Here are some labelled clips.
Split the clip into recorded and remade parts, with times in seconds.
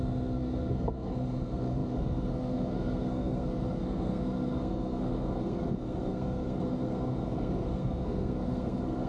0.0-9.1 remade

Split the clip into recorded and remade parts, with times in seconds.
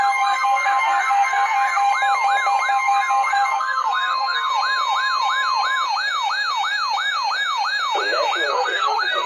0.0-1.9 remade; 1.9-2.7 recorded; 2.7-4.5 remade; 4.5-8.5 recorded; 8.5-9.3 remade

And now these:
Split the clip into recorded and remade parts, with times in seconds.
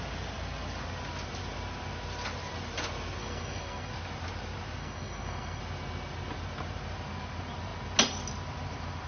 0.0-3.2 recorded; 3.2-3.9 remade; 3.9-4.8 recorded; 4.8-5.6 remade; 5.6-9.1 recorded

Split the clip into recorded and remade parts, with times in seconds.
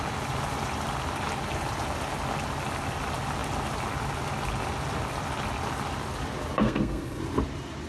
0.0-6.6 recorded; 6.6-7.2 remade; 7.2-7.9 recorded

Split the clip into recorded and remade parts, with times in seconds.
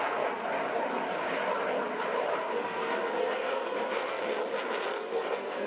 0.0-2.3 recorded; 2.3-4.2 remade; 4.2-4.9 recorded; 4.9-5.7 remade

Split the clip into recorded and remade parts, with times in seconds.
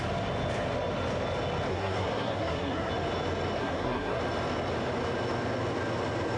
0.0-1.7 recorded; 1.7-2.9 remade; 2.9-3.6 recorded; 3.6-4.2 remade; 4.2-6.4 recorded